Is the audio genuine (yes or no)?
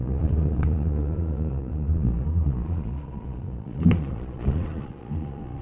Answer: no